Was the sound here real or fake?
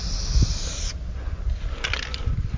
real